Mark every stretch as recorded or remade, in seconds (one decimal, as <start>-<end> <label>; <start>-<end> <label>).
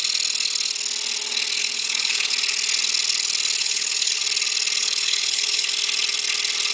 0.0-1.6 recorded; 1.6-2.3 remade; 2.3-3.6 recorded; 3.6-4.2 remade; 4.2-4.8 recorded; 4.8-5.7 remade; 5.7-6.7 recorded